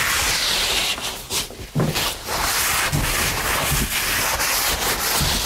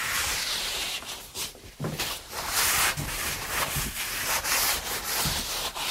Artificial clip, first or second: second